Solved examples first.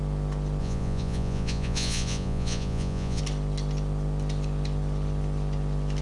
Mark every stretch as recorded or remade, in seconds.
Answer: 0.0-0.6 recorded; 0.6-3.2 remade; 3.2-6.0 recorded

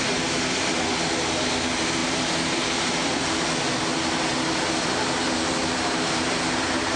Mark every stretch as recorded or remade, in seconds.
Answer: 0.0-7.0 recorded

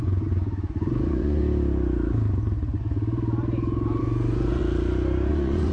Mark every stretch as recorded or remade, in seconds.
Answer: 0.0-1.4 remade; 1.4-4.0 recorded; 4.0-4.6 remade; 4.6-5.3 recorded; 5.3-5.7 remade

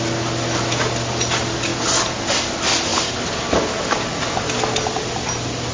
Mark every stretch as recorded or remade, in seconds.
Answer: 0.0-5.7 recorded

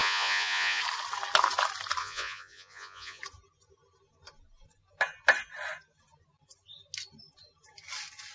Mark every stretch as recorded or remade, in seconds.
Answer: 0.0-0.8 remade; 0.8-2.0 recorded; 2.0-3.2 remade; 3.2-8.3 recorded

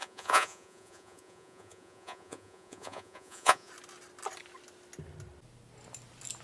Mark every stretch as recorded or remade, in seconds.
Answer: 0.0-3.7 remade; 3.7-6.4 recorded

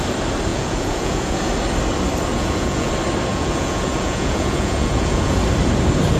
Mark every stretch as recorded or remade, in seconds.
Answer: 0.0-0.5 recorded; 0.5-1.4 remade; 1.4-2.3 recorded; 2.3-2.9 remade; 2.9-3.3 recorded; 3.3-5.4 remade; 5.4-6.2 recorded

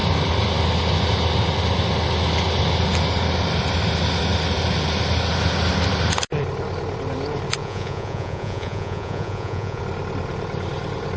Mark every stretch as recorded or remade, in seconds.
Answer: 0.0-7.6 recorded; 7.6-9.8 remade; 9.8-11.2 recorded